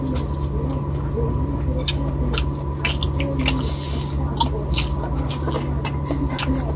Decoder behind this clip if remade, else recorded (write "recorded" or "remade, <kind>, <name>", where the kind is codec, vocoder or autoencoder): recorded